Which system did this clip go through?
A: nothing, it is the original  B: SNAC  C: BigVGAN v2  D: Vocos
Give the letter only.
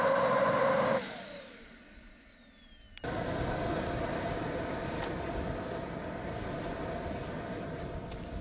A